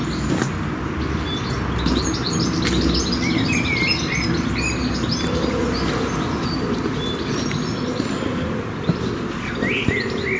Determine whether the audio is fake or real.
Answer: real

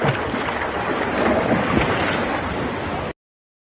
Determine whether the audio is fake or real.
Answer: real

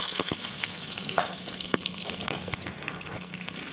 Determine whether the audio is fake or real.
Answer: fake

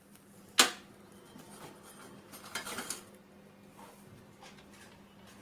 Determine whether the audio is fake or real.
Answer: real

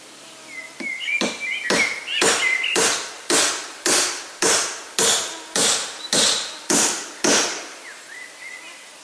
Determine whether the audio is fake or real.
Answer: real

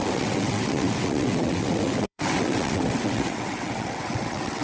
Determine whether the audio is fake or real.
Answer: fake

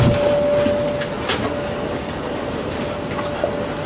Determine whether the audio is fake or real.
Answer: real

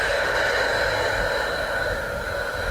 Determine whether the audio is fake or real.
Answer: real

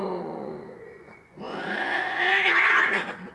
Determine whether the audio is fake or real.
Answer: fake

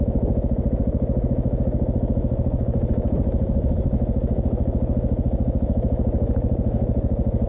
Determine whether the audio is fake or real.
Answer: fake